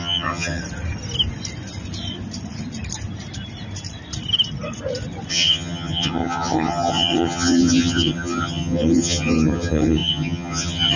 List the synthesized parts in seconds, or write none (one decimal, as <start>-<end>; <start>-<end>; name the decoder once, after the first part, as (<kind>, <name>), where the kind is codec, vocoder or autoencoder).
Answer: 0.0-0.6 (vocoder, HiFi-GAN); 5.3-11.0